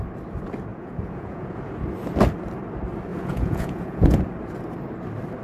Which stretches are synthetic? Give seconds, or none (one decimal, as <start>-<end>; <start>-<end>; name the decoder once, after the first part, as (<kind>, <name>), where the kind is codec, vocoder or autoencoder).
0.7-1.6 (vocoder, Vocos); 3.1-4.2